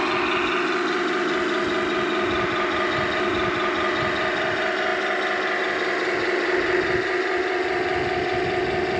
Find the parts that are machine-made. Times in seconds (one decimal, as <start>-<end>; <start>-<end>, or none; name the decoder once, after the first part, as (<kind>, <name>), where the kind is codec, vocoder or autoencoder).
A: none